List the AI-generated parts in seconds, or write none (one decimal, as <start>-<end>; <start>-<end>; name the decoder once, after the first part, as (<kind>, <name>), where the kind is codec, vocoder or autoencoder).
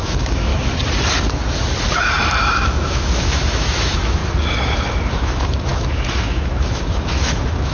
0.0-0.5 (autoencoder, DAC-VAE); 2.4-4.2; 5.1-7.7